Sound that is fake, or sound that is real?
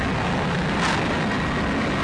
real